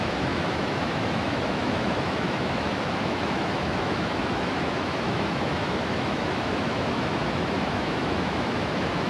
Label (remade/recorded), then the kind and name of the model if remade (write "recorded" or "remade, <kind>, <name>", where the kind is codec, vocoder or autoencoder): remade, autoencoder, DAC-VAE